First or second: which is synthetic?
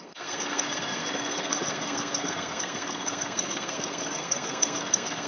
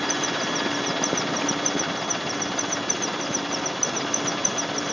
first